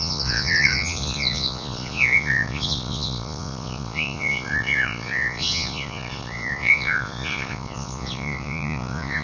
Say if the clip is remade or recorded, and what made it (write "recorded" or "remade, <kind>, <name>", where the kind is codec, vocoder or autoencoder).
remade, vocoder, Vocos